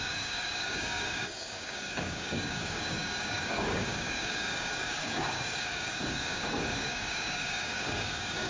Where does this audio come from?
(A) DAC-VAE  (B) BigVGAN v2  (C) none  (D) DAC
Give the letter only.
D